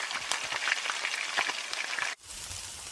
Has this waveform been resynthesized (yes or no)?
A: no